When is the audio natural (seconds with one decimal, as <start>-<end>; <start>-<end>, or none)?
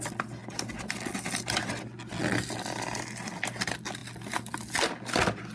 0.0-5.5